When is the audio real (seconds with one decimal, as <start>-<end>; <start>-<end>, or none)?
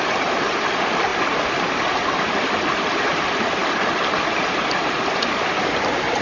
1.1-2.2